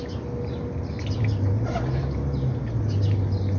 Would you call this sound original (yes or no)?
yes